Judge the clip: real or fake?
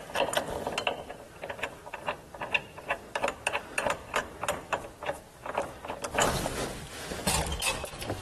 real